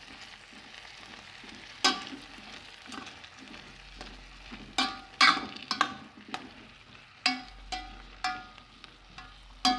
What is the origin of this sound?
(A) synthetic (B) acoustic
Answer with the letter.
B